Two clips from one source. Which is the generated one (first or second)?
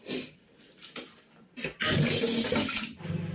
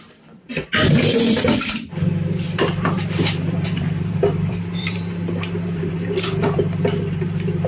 second